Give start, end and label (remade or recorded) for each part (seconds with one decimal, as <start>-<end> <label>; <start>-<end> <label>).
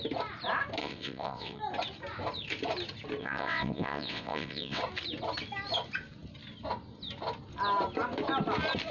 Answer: 0.0-0.8 recorded; 0.8-1.6 remade; 1.6-3.2 recorded; 3.2-4.8 remade; 4.8-8.9 recorded